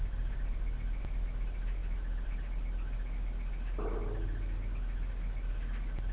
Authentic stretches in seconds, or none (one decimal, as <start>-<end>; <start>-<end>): 0.0-6.1